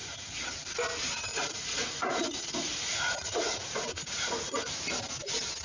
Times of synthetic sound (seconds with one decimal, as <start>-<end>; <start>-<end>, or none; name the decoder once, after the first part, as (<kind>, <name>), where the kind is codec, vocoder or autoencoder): 0.0-0.5 (vocoder, Vocos); 1.3-4.7